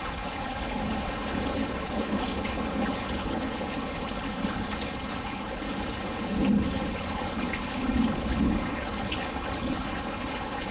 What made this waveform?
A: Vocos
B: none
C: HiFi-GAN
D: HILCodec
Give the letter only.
D